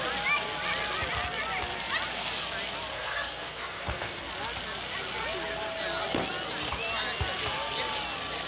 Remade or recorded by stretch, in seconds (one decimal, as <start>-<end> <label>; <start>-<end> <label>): 0.0-2.9 recorded; 2.9-4.2 remade; 4.2-8.5 recorded